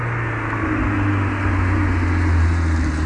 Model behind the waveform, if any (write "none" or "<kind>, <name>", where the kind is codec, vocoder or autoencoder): none